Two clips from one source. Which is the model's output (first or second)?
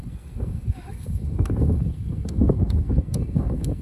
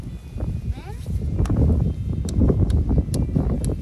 first